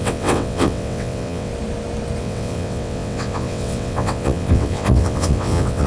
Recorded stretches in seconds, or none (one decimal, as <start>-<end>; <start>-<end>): 1.5-2.2